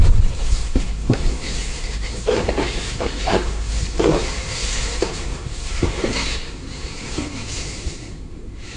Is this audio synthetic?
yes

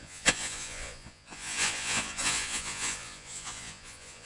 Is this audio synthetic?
yes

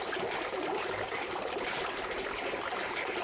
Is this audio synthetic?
no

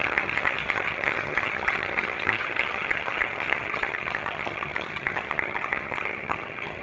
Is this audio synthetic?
yes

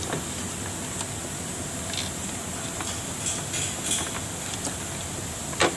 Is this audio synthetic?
no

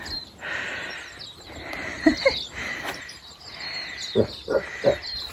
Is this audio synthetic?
no